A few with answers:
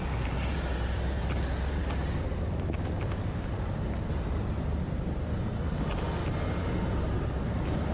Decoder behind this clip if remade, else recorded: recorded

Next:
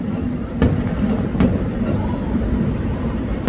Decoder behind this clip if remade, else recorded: recorded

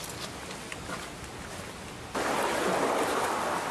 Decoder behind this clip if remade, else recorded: recorded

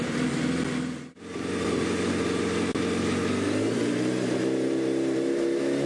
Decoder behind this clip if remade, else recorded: recorded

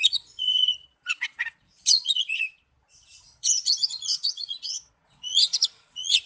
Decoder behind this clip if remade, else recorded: remade, vocoder, Vocos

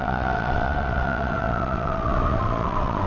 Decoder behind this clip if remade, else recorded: remade, vocoder, WaveNeXt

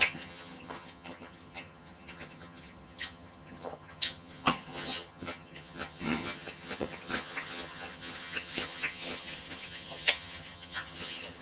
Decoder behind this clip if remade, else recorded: remade, vocoder, HiFi-GAN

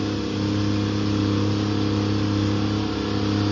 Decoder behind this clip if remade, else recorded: recorded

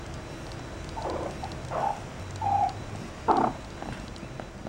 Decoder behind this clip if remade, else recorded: recorded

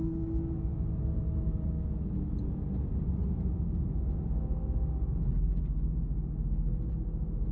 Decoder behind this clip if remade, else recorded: recorded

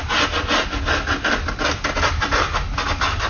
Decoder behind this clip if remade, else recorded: recorded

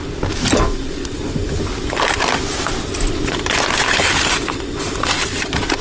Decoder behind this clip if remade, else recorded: recorded